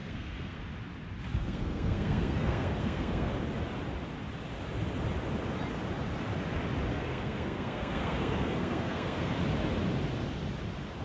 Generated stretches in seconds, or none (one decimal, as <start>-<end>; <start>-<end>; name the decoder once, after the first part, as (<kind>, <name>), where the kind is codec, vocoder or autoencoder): 0.0-0.6 (codec, SNAC); 1.4-3.3; 6.9-9.4